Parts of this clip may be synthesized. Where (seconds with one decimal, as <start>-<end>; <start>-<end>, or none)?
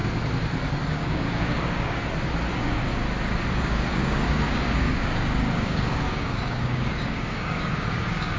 0.9-2.0; 2.5-2.9; 3.5-8.4